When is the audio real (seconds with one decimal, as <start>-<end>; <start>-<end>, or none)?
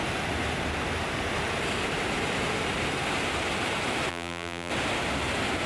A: 0.0-4.1; 4.7-5.7